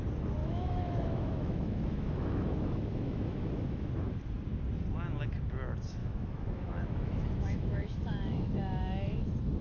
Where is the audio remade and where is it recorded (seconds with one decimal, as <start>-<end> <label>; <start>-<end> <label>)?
0.0-0.4 recorded; 0.4-3.9 remade; 3.9-6.0 recorded; 6.0-9.2 remade; 9.2-9.6 recorded